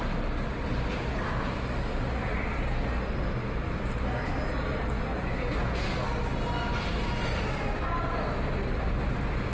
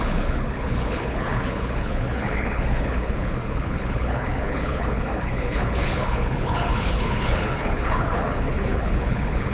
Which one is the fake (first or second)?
second